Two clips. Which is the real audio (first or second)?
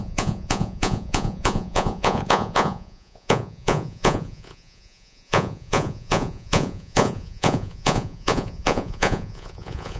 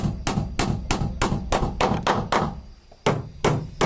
second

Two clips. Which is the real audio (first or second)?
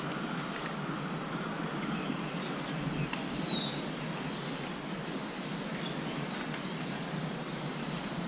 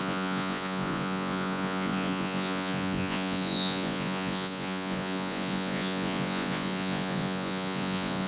first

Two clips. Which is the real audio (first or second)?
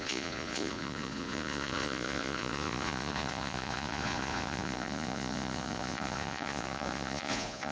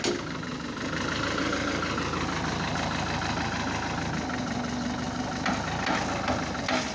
second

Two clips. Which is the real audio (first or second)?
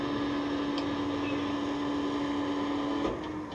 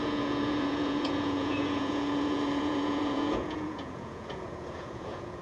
first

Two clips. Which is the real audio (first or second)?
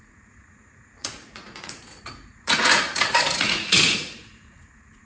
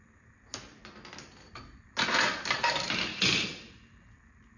second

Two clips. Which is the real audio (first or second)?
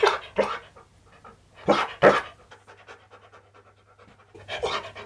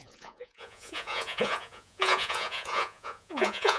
first